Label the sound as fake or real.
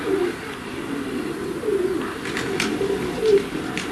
real